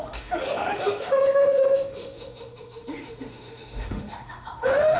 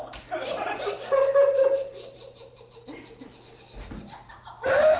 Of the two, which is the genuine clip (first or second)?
second